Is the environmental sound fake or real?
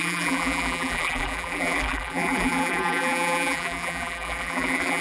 fake